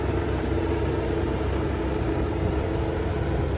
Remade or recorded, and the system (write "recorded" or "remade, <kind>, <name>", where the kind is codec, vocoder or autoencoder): remade, vocoder, BigVGAN v2